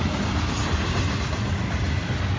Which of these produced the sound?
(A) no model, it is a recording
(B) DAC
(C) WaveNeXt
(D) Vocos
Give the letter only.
A